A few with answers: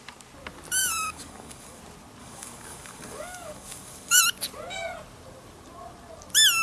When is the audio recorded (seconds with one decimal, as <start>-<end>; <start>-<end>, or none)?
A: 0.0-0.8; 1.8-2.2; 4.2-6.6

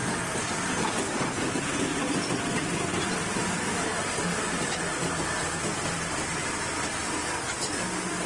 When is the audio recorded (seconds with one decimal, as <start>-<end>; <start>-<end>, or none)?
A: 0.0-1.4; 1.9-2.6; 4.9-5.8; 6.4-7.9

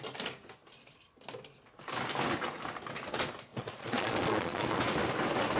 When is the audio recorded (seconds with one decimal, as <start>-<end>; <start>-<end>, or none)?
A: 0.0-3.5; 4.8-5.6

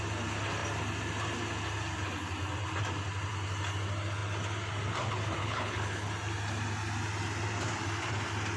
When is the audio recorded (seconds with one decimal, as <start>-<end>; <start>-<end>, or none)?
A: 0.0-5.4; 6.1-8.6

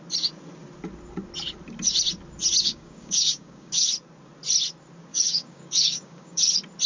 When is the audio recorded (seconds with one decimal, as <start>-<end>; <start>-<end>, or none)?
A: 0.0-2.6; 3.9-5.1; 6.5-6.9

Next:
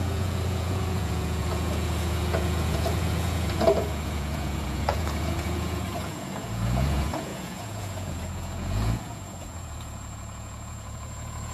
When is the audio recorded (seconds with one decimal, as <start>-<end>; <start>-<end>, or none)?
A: none

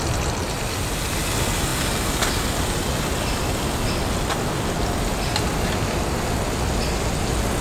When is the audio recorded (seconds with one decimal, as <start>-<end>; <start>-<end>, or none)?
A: 0.0-7.6